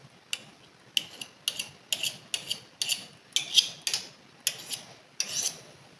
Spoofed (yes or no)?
no